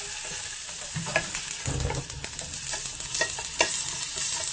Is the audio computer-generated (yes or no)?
no